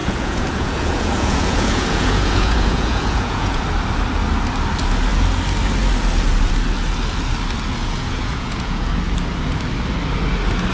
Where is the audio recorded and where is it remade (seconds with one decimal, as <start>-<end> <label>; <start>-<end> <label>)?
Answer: 0.0-3.6 remade; 3.6-7.8 recorded; 7.8-8.9 remade; 8.9-10.7 recorded